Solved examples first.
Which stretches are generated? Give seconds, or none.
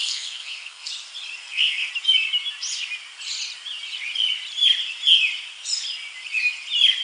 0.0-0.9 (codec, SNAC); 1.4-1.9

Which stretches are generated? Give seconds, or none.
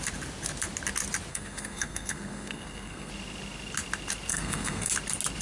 1.3-3.1 (codec, SNAC); 4.3-4.9